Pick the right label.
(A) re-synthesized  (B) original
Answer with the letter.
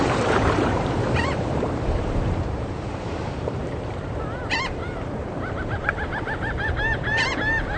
A